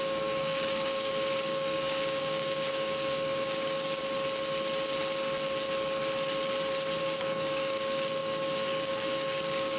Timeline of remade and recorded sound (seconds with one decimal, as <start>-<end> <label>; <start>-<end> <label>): 0.0-4.0 remade; 4.0-7.0 recorded; 7.0-9.8 remade